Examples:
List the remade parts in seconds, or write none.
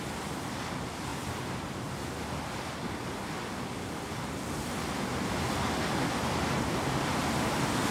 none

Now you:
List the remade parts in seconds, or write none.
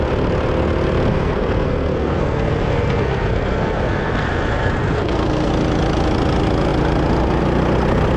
1.1-5.5 (codec, SNAC)